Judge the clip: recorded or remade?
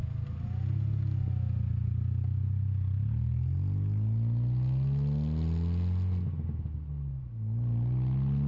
recorded